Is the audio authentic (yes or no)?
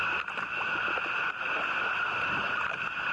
yes